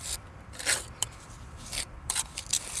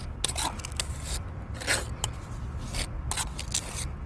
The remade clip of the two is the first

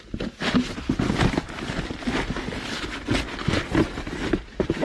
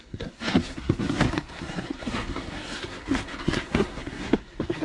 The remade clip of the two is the second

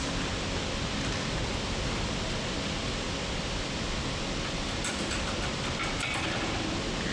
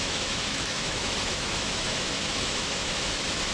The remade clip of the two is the second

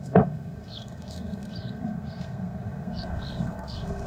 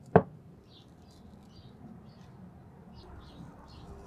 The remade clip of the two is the first